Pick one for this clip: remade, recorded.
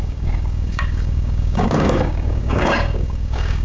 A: remade